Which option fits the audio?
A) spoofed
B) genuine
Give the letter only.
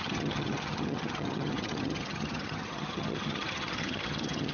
A